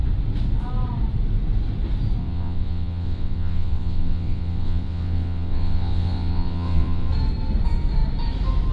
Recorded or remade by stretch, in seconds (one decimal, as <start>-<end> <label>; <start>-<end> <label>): 0.0-2.2 recorded; 2.2-7.1 remade; 7.1-8.7 recorded